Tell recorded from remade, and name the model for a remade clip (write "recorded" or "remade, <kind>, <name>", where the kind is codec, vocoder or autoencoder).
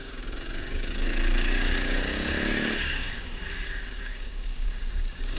remade, codec, DAC